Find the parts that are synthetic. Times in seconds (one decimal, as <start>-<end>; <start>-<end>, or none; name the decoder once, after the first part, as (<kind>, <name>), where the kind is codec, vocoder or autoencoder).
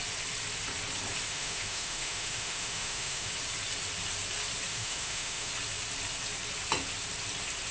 1.3-3.3 (autoencoder, DAC-VAE); 4.7-5.5